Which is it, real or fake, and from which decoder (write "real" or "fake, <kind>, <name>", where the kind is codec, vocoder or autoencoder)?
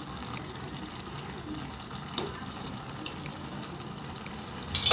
real